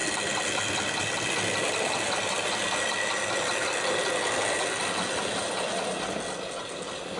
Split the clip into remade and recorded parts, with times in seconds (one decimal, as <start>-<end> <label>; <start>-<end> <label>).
0.0-7.2 recorded

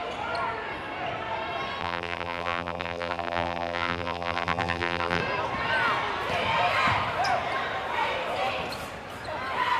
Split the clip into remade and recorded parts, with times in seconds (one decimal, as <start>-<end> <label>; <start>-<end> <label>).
0.0-1.8 recorded; 1.8-5.2 remade; 5.2-9.8 recorded